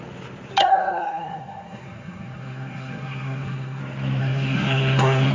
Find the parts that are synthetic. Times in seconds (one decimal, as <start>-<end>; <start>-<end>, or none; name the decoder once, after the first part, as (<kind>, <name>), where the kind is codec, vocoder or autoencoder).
0.6-3.8 (codec, SNAC); 4.2-5.3